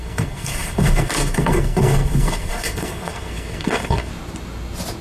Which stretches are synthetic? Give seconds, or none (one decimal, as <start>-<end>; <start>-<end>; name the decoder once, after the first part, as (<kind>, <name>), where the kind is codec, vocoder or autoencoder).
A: 0.0-4.1 (codec, SNAC)